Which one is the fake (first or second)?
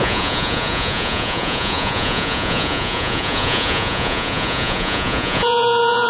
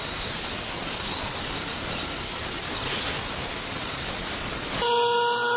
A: first